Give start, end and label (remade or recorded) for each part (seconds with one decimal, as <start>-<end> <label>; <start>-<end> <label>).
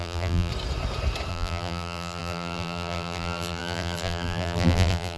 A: 0.0-0.5 remade; 0.5-1.3 recorded; 1.3-5.2 remade